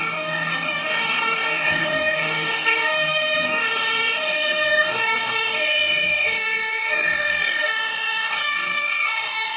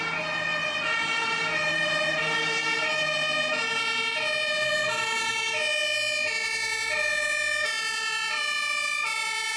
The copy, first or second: first